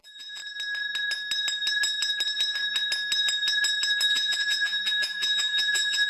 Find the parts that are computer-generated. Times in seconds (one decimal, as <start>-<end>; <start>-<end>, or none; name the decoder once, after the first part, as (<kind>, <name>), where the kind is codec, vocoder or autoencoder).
0.0-0.4 (vocoder, BigVGAN v2); 4.1-6.1